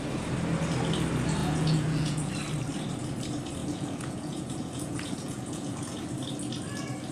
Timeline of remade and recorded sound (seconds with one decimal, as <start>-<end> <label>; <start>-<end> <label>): 0.0-1.4 recorded; 1.4-2.3 remade; 2.3-3.6 recorded; 3.6-6.0 remade; 6.0-7.1 recorded